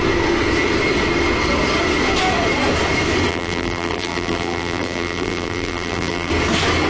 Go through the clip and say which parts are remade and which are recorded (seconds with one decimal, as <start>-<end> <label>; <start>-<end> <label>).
0.0-3.3 recorded; 3.3-6.3 remade; 6.3-6.9 recorded